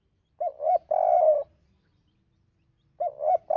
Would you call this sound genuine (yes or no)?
yes